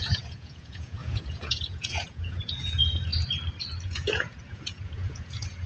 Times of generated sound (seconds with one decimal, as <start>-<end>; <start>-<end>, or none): 0.0-3.1; 3.8-5.7

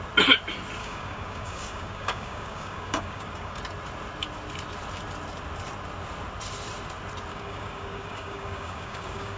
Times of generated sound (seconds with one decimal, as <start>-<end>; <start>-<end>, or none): 0.8-3.6; 7.3-9.4

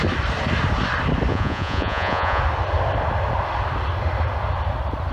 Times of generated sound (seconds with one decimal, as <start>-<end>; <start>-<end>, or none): 1.3-2.4

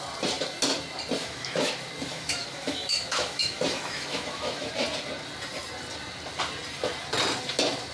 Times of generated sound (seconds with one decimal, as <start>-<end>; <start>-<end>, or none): 1.2-1.7; 2.1-4.7